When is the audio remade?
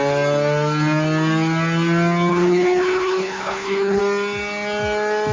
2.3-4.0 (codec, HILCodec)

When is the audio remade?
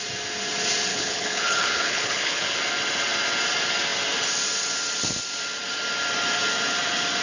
0.9-2.6 (codec, HILCodec)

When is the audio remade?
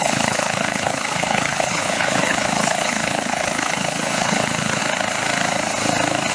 0.0-4.8 (codec, HILCodec)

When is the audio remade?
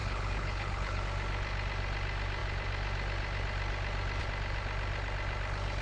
0.0-1.0 (codec, HILCodec)